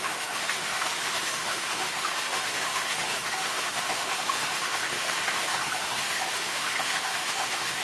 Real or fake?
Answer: fake